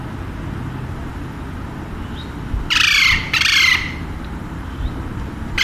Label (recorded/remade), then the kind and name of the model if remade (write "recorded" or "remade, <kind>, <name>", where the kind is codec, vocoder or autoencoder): recorded